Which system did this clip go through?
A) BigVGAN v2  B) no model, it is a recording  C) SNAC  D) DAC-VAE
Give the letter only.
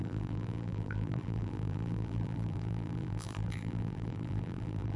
A